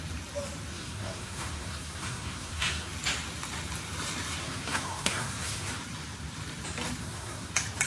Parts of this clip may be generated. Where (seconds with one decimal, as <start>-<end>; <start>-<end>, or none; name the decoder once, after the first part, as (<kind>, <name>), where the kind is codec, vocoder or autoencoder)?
0.7-2.9 (codec, SNAC); 4.4-5.7; 7.0-7.5